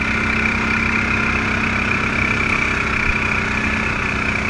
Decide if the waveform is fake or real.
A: real